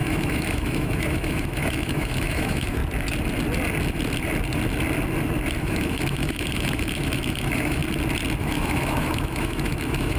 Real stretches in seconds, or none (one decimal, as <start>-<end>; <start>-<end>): 2.8-5.6; 7.8-8.4